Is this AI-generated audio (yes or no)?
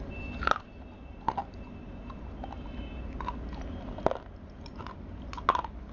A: no